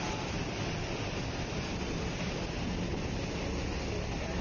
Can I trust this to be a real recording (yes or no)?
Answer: yes